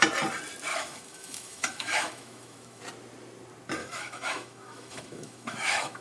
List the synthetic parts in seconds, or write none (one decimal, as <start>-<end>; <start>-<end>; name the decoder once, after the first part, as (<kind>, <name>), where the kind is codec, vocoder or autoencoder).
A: 0.7-2.8 (autoencoder, DAC-VAE); 3.8-6.0